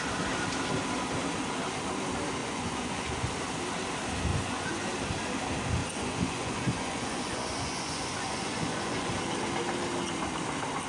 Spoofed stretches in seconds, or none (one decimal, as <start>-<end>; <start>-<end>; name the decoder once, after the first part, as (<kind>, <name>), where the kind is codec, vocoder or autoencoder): 2.4-3.3 (vocoder, Vocos); 4.3-4.8; 5.8-9.1

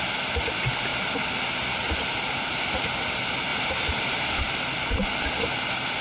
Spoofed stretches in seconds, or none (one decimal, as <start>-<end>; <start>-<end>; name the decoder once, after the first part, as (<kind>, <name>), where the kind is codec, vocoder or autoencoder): 3.5-4.4 (vocoder, BigVGAN v2)

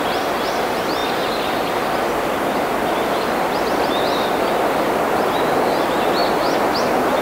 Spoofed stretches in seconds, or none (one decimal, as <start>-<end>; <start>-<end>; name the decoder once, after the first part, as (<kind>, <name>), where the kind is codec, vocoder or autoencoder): none

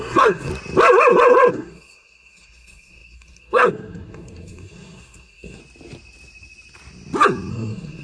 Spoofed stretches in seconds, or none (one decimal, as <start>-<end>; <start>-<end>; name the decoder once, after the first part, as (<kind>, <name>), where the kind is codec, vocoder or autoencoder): 0.0-0.5 (codec, SNAC); 1.5-5.6; 7.5-8.0

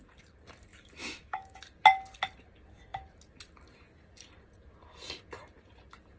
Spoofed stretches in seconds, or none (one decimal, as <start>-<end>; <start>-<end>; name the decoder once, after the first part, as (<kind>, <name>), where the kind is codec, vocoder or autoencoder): 0.7-1.6 (autoencoder, DAC-VAE)

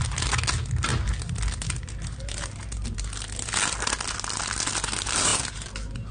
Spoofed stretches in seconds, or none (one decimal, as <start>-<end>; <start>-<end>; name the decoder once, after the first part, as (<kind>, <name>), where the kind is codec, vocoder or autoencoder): none